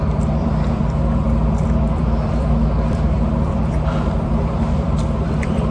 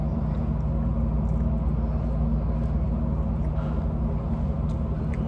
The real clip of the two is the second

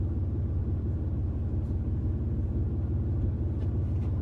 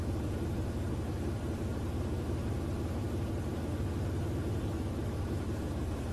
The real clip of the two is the first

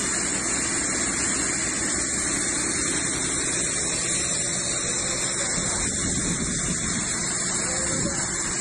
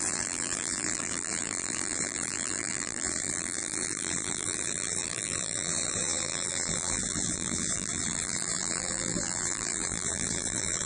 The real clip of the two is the first